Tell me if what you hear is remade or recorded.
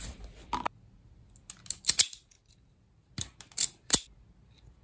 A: recorded